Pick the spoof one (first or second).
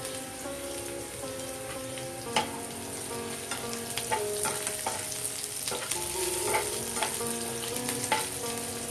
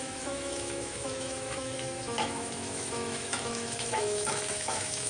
second